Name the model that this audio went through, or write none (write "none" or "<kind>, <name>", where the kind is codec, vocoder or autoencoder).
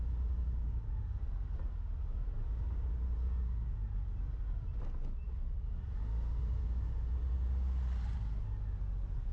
none